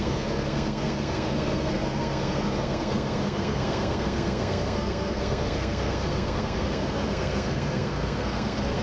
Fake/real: fake